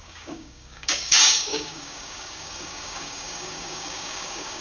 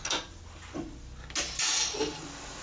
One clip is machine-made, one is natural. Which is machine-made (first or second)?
first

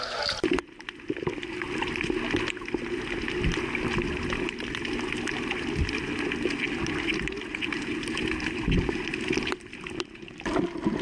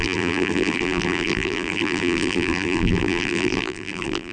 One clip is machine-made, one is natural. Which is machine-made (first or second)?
second